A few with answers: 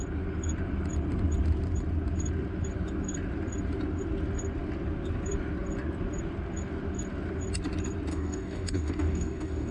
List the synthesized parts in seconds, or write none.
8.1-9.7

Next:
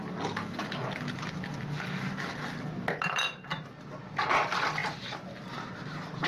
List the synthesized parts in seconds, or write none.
none

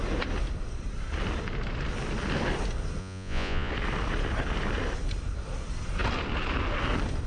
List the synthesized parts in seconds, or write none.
3.0-3.7

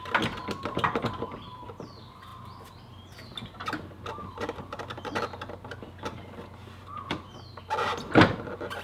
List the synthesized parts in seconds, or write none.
none